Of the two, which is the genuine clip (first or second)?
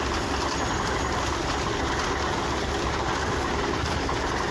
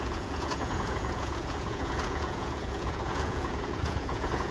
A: first